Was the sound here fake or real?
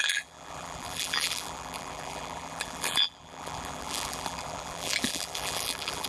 fake